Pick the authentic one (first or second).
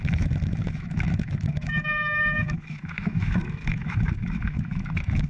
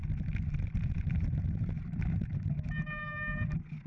second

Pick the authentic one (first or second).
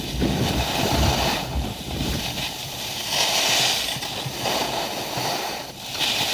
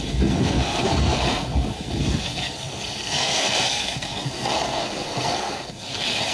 first